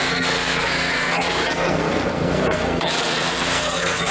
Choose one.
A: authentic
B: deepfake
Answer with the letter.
B